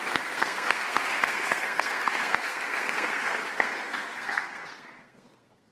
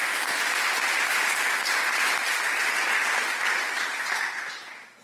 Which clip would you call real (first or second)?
second